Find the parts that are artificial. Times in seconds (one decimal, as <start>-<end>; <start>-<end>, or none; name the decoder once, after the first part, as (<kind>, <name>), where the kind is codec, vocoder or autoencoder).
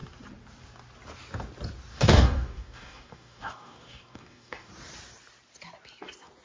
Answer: 1.9-4.7 (codec, DAC)